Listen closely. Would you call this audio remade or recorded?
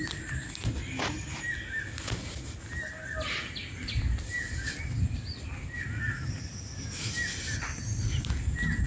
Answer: recorded